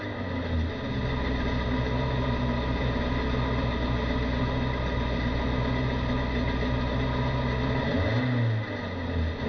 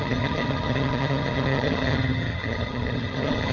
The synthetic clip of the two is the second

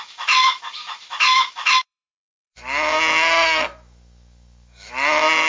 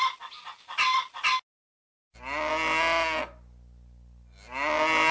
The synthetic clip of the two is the first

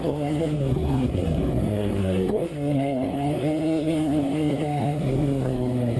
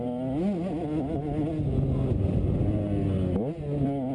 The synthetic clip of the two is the first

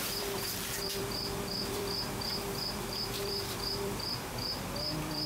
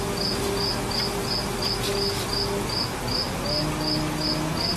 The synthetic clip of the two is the first